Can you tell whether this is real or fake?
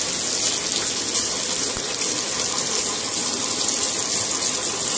real